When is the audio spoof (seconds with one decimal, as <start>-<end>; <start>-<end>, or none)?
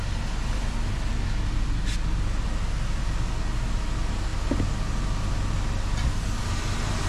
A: none